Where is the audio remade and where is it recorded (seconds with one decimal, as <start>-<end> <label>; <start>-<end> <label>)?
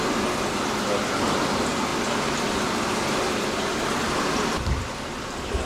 0.0-5.7 recorded